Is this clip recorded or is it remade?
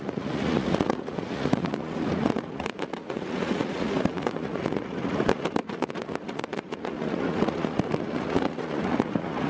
remade